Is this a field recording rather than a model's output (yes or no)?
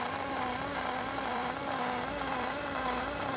no